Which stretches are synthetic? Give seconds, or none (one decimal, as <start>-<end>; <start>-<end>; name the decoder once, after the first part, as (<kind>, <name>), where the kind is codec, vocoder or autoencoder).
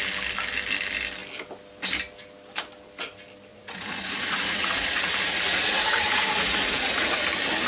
3.5-7.2 (vocoder, Vocos)